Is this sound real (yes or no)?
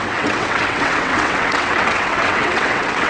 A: no